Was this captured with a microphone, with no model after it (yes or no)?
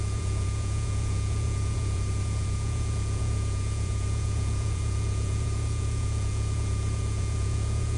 no